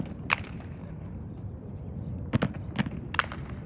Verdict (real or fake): real